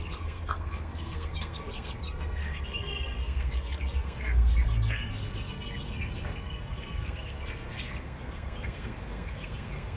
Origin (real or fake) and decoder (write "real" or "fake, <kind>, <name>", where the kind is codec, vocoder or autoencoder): fake, codec, SNAC